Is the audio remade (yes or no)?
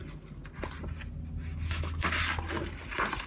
no